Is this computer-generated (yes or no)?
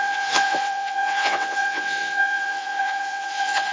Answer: yes